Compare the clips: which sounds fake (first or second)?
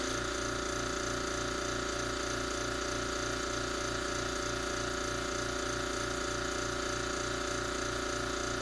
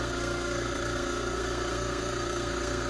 second